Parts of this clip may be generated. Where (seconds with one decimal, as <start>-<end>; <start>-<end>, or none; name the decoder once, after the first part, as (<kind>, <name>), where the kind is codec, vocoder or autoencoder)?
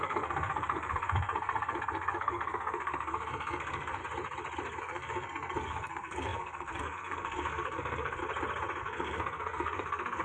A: 0.0-4.0 (codec, SNAC); 4.8-8.2; 8.8-10.2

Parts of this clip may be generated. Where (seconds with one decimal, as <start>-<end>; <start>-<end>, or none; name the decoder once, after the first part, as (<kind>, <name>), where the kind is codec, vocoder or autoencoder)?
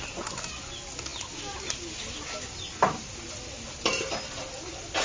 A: none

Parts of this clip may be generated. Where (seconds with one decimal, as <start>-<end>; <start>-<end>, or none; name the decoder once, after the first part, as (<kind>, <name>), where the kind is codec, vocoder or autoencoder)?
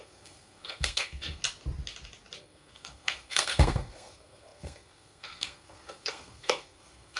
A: 0.0-1.4 (codec, SNAC); 2.4-7.2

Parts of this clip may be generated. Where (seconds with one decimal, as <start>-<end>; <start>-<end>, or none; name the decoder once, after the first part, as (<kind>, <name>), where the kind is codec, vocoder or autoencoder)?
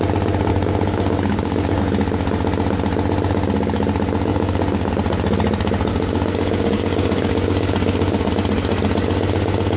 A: 0.5-1.8 (codec, DAC); 4.3-4.9; 5.9-8.3